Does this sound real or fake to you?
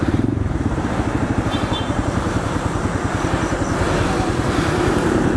fake